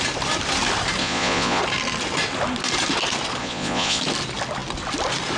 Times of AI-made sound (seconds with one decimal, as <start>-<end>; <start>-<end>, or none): 1.0-1.6; 3.4-4.0

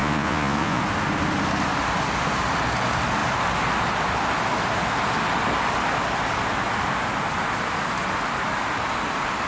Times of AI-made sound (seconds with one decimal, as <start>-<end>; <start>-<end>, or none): 0.0-0.8

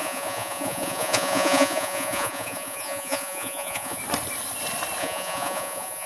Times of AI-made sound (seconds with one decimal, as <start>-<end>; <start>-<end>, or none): 0.0-4.0; 5.0-6.1

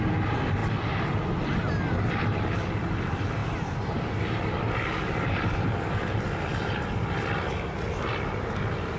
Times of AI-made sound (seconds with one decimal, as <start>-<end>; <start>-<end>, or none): none

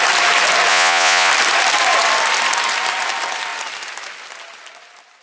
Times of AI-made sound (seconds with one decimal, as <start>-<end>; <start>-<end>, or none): 0.7-1.3

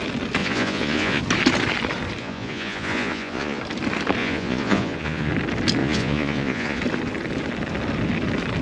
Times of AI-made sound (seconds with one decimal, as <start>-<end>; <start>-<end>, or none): 0.4-1.2; 2.2-3.6; 4.2-5.3; 5.8-6.8

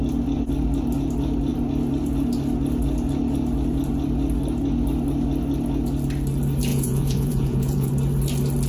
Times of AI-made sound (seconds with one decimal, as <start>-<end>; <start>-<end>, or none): 6.7-7.9